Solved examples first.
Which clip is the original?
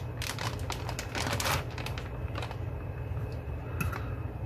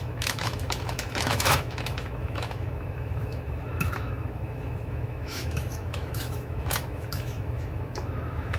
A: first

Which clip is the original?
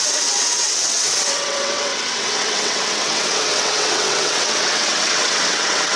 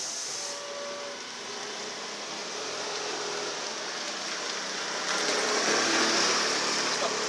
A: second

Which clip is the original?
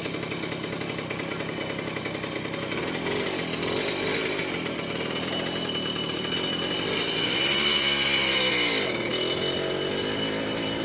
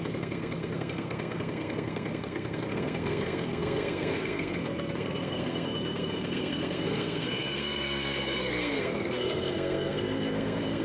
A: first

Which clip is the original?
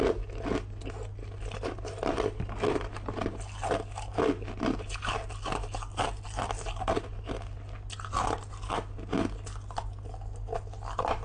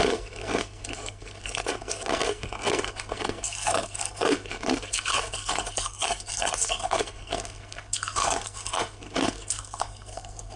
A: first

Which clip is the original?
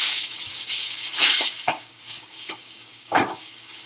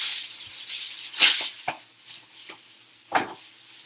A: second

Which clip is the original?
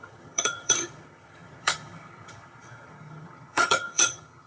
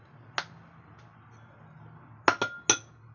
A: second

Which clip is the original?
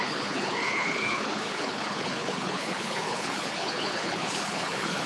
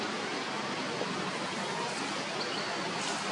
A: second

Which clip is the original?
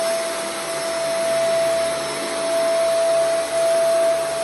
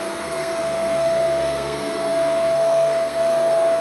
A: first